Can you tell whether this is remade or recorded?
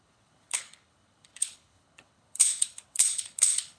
remade